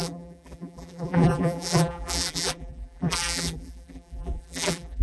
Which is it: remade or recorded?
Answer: remade